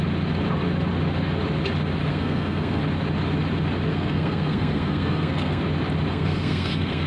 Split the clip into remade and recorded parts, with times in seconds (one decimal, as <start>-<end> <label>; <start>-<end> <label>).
0.0-2.1 recorded; 2.1-2.8 remade; 2.8-3.9 recorded; 3.9-5.6 remade; 5.6-6.1 recorded; 6.1-7.1 remade